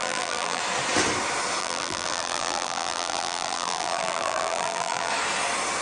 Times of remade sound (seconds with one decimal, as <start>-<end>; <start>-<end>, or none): 0.0-0.6; 1.6-5.1